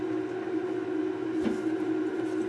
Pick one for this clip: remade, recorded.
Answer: recorded